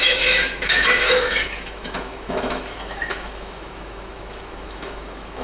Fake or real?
fake